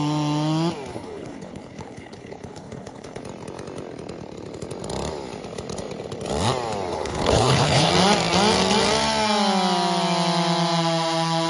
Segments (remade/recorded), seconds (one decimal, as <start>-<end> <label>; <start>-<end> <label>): 0.0-0.9 recorded; 0.9-3.2 remade; 3.2-6.9 recorded; 6.9-7.9 remade; 7.9-11.5 recorded